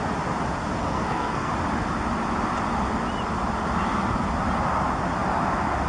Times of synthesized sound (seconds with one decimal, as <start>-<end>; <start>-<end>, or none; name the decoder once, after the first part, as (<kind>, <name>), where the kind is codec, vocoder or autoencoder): 0.8-1.5 (codec, SNAC)